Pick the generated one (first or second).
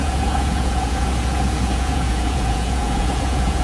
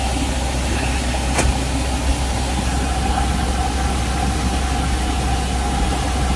first